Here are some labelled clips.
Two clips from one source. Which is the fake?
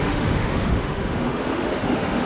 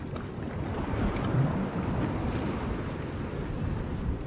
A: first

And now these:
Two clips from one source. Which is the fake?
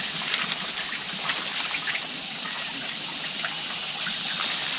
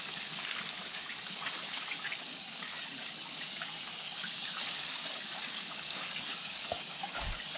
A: second